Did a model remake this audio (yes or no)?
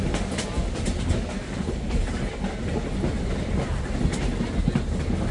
no